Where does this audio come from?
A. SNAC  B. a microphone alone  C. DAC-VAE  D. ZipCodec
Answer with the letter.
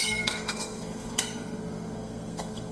A